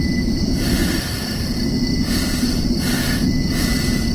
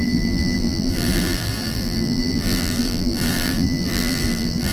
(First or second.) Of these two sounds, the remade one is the second